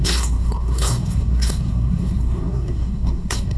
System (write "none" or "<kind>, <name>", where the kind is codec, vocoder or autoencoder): codec, SNAC